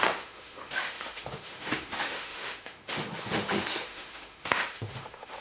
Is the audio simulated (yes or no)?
yes